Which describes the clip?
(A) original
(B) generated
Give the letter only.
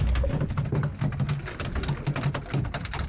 A